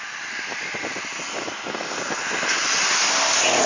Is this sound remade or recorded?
recorded